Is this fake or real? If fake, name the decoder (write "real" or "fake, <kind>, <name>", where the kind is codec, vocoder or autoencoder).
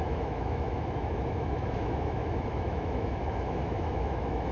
fake, autoencoder, DAC-VAE